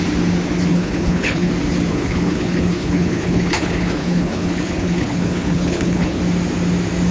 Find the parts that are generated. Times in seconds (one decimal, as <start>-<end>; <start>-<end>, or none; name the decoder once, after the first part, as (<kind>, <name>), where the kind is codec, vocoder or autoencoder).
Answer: 0.7-1.5 (codec, HILCodec); 1.9-6.2